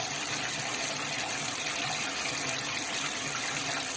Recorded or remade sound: recorded